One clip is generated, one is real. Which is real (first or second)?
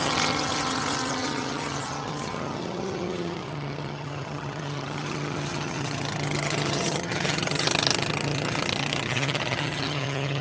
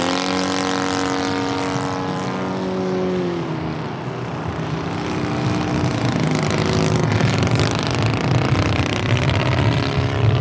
second